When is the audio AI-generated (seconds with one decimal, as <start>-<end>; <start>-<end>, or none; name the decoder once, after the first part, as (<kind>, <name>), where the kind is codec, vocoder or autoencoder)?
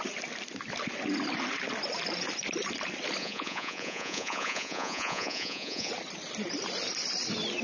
3.2-5.9 (vocoder, Vocos)